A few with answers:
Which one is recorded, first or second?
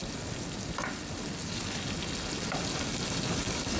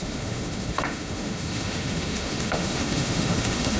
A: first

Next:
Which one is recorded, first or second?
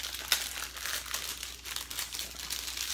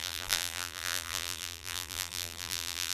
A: first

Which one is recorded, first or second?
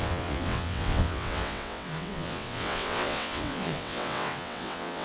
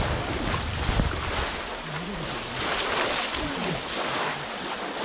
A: second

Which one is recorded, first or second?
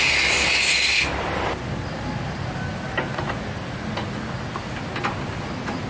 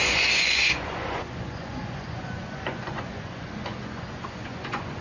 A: first